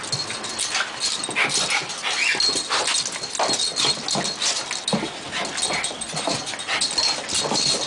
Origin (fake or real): real